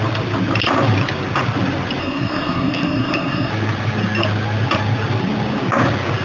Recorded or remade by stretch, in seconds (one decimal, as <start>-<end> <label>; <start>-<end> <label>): 0.0-2.0 recorded; 2.0-3.5 remade; 3.5-6.2 recorded